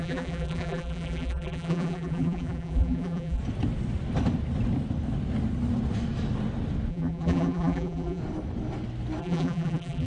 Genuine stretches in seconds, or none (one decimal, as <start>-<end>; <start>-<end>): 3.4-6.9; 8.2-9.2